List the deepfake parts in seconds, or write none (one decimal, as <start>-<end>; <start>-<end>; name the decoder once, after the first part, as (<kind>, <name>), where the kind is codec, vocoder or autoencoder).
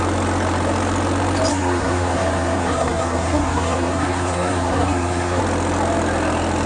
1.5-5.4 (codec, SNAC)